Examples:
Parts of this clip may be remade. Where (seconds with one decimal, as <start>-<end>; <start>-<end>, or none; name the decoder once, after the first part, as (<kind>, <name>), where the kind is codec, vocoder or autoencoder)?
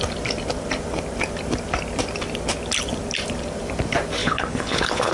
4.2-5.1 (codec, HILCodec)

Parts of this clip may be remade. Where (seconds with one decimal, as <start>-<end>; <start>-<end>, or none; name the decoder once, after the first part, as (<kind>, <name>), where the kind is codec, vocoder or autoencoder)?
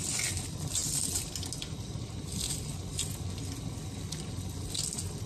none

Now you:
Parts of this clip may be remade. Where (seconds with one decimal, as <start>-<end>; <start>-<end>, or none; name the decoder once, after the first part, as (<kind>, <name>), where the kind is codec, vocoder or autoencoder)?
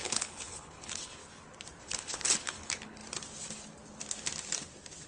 0.0-1.2 (codec, HILCodec); 1.8-3.0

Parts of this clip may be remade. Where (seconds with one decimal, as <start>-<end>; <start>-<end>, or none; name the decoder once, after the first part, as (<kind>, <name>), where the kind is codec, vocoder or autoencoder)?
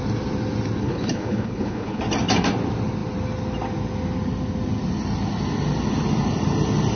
0.8-2.0 (codec, HILCodec)